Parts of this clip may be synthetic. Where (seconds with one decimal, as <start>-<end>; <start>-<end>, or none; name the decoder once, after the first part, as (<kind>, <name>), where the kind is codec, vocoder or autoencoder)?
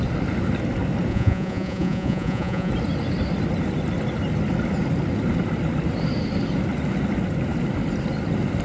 1.1-2.7 (vocoder, Vocos)